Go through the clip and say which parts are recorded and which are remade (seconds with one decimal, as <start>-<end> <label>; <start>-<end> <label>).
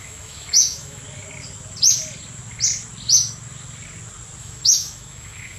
0.0-1.0 remade; 1.0-4.4 recorded; 4.4-5.6 remade